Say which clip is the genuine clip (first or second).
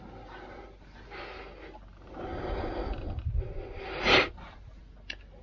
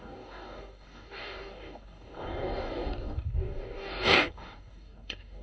first